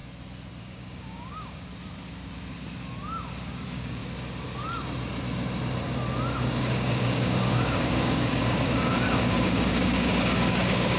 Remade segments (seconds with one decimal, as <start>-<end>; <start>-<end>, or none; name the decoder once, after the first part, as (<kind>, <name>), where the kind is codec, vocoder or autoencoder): 0.6-1.7 (codec, DAC); 3.4-4.0; 6.6-11.0